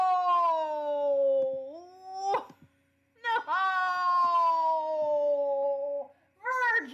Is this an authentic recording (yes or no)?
yes